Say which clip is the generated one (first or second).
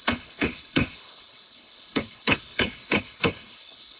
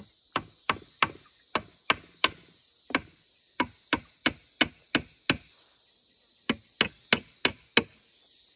first